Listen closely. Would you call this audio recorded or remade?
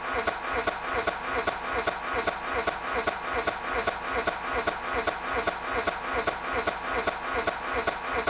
recorded